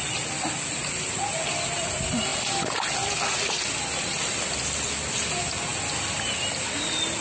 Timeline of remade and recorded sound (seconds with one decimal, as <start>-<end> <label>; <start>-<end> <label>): 0.0-7.2 recorded